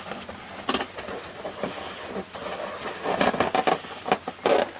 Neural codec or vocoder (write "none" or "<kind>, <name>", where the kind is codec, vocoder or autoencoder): none